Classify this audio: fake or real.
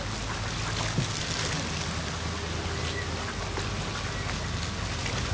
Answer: real